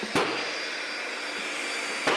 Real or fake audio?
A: real